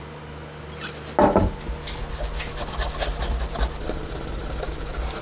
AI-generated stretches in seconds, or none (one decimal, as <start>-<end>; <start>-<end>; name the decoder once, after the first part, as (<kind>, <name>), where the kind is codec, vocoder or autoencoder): none